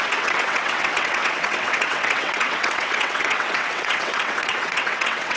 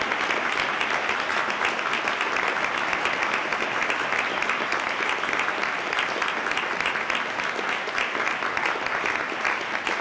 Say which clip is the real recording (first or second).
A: second